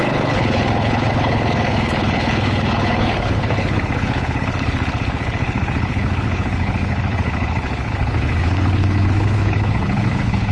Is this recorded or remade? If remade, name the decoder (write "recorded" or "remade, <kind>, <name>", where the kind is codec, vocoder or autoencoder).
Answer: remade, codec, HILCodec